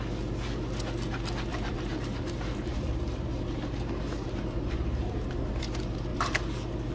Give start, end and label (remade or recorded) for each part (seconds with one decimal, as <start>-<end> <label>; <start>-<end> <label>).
0.0-1.5 recorded; 1.5-5.6 remade; 5.6-6.1 recorded; 6.1-6.9 remade